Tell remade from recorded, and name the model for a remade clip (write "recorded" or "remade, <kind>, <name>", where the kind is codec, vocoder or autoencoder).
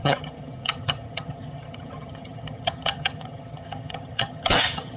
remade, vocoder, HiFi-GAN